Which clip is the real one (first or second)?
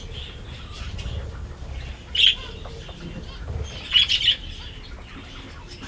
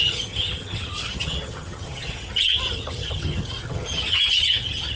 first